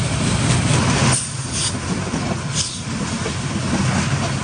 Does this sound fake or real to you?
real